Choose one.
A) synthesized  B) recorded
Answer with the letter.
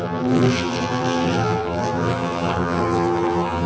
A